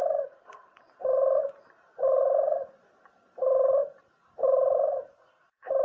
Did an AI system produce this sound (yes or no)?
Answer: yes